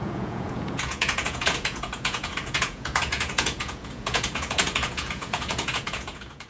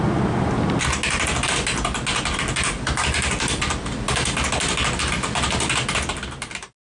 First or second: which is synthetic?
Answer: first